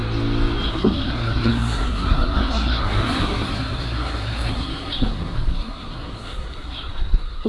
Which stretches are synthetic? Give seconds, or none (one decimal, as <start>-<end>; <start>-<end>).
0.7-7.5